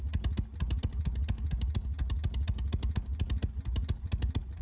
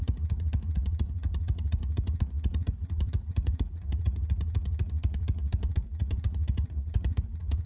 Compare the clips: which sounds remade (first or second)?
second